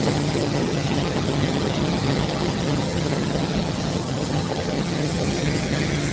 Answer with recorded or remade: remade